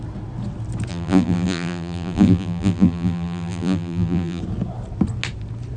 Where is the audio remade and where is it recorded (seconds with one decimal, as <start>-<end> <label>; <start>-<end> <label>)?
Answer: 0.0-0.9 recorded; 0.9-4.4 remade; 4.4-5.8 recorded